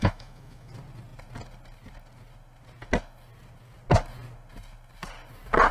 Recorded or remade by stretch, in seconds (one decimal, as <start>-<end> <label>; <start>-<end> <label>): 0.0-0.7 remade; 0.7-5.7 recorded